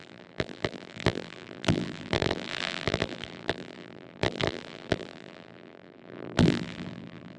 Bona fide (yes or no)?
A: no